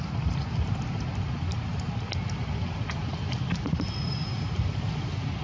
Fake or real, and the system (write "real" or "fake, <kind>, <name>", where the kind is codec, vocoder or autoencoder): real